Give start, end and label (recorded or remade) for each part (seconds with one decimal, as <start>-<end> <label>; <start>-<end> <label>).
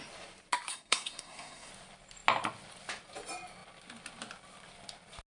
0.0-0.7 recorded; 0.7-1.7 remade; 1.7-5.3 recorded